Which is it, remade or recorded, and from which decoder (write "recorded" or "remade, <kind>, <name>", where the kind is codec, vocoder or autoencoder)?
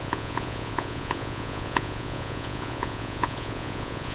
remade, vocoder, Vocos